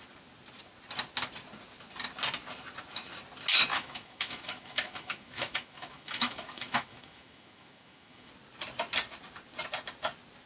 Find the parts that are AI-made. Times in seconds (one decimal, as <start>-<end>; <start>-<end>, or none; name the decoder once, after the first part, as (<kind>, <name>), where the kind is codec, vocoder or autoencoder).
3.7-8.3 (autoencoder, DAC-VAE)